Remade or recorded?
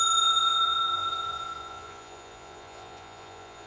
remade